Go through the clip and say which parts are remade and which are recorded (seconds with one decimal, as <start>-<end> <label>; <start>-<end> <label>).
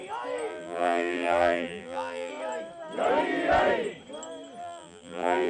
0.0-0.5 recorded; 0.5-2.3 remade; 2.3-4.6 recorded; 4.6-5.5 remade